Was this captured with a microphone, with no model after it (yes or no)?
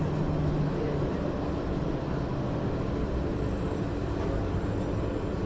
yes